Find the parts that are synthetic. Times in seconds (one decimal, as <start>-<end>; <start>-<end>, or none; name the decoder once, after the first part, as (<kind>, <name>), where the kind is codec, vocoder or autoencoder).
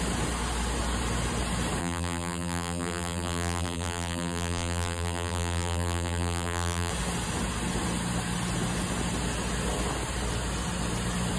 1.8-6.9 (vocoder, BigVGAN v2)